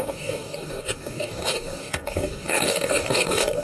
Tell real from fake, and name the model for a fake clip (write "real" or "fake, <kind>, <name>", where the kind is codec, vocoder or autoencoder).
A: fake, codec, DAC